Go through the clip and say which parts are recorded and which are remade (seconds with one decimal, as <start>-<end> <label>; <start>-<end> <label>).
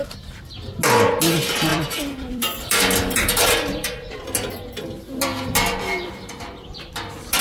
0.0-1.7 recorded; 1.7-4.5 remade; 4.5-7.4 recorded